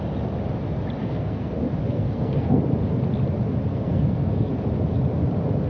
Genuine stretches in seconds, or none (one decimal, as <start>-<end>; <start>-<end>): 0.0-1.0; 1.5-1.9; 2.6-3.7; 4.5-5.7